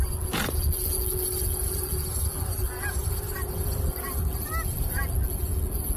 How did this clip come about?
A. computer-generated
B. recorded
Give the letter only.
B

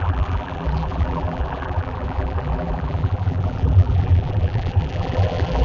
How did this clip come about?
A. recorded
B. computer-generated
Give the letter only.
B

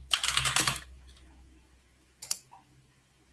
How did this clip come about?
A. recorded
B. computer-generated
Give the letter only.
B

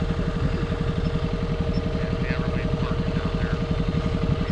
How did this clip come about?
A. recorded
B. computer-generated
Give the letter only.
A